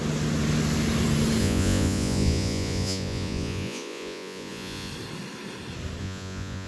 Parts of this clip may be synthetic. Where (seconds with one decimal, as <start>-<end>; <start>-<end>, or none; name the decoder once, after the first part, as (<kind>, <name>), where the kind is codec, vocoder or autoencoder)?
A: 1.4-4.9 (vocoder, Vocos); 6.0-6.7